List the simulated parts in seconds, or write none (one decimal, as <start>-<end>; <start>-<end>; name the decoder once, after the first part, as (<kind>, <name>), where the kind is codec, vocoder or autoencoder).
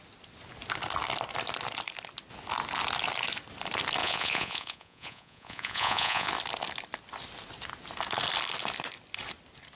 4.0-6.3 (vocoder, Vocos)